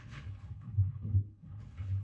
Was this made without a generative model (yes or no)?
no